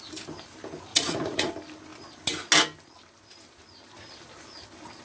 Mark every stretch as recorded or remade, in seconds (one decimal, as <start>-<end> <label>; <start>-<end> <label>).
0.0-0.9 recorded; 0.9-1.5 remade; 1.5-5.0 recorded